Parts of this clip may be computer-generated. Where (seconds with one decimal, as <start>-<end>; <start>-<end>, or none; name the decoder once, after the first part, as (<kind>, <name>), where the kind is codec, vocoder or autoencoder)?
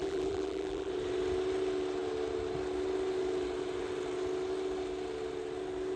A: 0.0-0.9 (vocoder, BigVGAN v2)